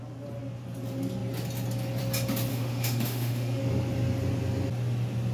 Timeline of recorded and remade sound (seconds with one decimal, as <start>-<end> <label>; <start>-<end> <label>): 0.0-2.5 recorded; 2.5-3.6 remade; 3.6-5.3 recorded